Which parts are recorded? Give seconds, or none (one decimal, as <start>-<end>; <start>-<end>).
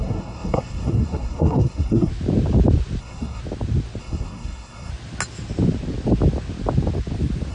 2.1-3.0; 3.4-4.0; 4.9-7.5